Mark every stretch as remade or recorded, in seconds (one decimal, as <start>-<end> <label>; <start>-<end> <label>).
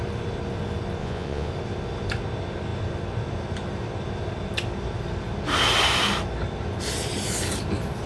0.0-1.0 recorded; 1.0-1.5 remade; 1.5-8.1 recorded